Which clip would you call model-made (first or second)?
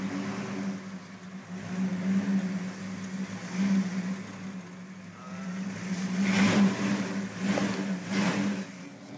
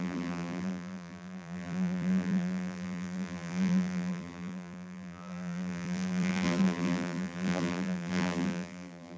second